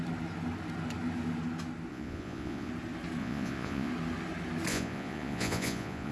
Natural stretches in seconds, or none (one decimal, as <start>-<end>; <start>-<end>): 0.0-1.9; 2.7-3.2; 3.9-4.7